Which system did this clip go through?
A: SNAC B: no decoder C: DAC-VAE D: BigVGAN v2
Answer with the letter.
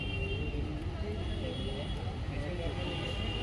B